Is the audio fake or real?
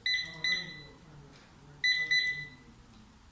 real